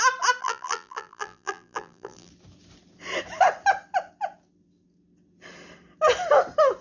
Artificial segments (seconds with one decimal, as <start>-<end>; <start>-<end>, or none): 0.4-2.3